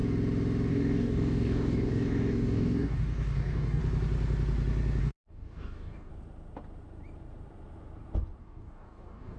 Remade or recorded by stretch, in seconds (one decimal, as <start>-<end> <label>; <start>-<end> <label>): 0.0-0.7 recorded; 0.7-3.8 remade; 3.8-5.0 recorded; 5.0-6.1 remade; 6.1-8.4 recorded; 8.4-9.4 remade